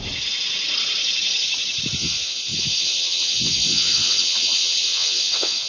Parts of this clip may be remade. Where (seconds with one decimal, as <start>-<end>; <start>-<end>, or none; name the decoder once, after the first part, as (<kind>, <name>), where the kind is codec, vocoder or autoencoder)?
2.0-5.7 (vocoder, WaveNeXt)